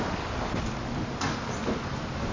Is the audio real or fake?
real